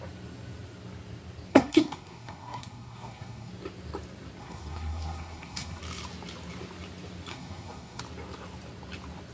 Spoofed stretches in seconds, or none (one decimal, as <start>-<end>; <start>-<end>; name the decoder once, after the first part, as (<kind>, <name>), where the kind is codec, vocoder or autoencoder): 1.5-3.5 (codec, SNAC); 4.4-5.8; 7.3-8.0

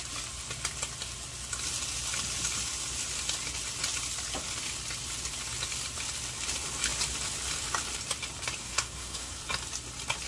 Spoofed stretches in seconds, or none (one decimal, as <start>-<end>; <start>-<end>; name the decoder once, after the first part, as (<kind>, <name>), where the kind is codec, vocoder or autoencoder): 8.6-9.4 (codec, SNAC)

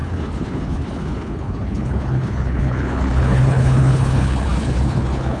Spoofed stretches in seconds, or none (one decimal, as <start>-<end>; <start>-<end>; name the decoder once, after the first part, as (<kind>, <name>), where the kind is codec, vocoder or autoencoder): 0.0-5.4 (codec, HILCodec)

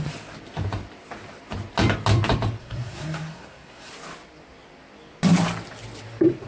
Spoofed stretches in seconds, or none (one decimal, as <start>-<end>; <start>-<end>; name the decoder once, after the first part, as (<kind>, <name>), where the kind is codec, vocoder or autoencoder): 2.6-3.9 (codec, SNAC)

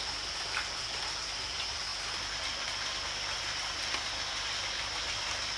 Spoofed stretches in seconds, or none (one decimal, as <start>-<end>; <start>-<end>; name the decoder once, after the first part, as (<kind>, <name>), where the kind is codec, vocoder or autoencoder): none

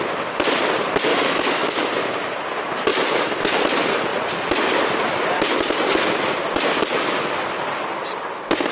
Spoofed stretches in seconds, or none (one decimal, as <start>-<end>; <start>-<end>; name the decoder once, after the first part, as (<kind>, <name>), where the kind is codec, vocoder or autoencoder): 1.1-1.9 (autoencoder, DAC-VAE); 2.9-3.4

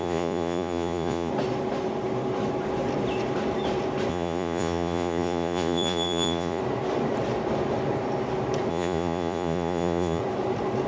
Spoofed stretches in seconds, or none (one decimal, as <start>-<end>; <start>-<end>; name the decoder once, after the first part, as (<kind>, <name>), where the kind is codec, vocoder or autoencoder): 0.0-1.3 (vocoder, Vocos); 4.1-6.6; 8.7-10.2